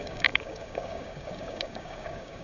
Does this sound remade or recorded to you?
remade